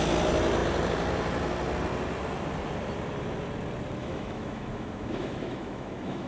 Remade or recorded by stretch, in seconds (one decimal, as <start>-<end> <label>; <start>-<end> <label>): 0.0-4.0 recorded; 4.0-6.3 remade